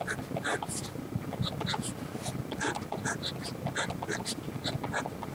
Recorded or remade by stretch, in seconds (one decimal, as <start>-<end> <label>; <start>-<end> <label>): 0.0-5.3 recorded